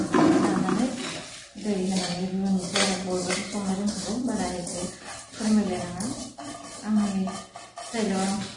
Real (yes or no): yes